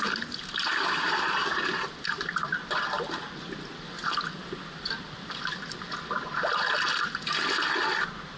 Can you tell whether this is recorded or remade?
recorded